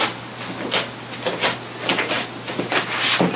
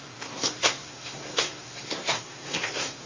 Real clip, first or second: first